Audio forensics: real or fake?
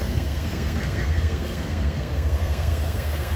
fake